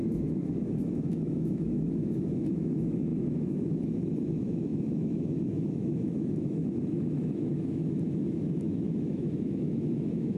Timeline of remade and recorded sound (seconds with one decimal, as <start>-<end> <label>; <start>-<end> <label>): 0.0-10.4 remade